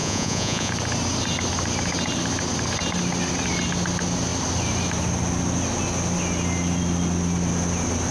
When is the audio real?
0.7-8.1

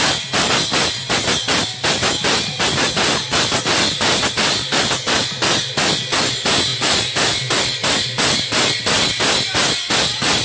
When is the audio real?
0.0-10.4